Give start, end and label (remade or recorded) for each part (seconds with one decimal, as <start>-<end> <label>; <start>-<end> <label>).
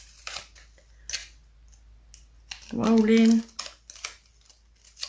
0.0-5.1 recorded